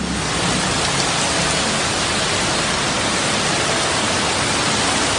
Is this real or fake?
real